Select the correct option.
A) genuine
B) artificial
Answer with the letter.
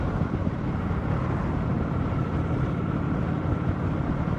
A